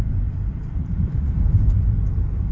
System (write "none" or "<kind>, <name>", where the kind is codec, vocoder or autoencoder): vocoder, BigVGAN v2